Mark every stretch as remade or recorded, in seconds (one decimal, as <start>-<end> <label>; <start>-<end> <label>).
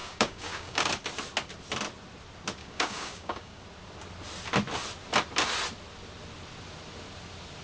0.0-0.9 remade; 0.9-2.6 recorded; 2.6-3.6 remade; 3.6-7.6 recorded